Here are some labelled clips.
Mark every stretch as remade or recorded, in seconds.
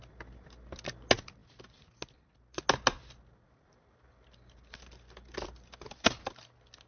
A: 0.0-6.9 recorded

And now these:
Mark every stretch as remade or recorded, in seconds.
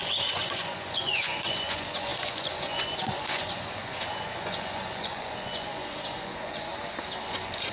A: 0.0-6.7 remade; 6.7-7.3 recorded; 7.3-7.7 remade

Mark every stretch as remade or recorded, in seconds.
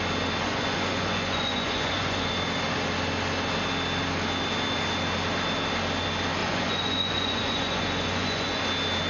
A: 0.0-0.4 recorded; 0.4-2.3 remade; 2.3-6.4 recorded; 6.4-8.6 remade; 8.6-9.1 recorded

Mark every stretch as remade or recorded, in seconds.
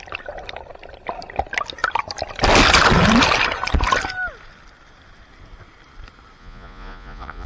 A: 0.0-6.4 recorded; 6.4-7.5 remade